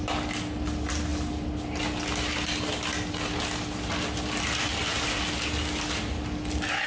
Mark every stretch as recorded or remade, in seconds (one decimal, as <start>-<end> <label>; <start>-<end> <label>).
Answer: 0.0-6.9 recorded